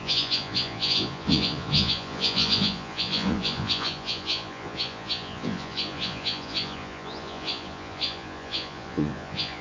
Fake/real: fake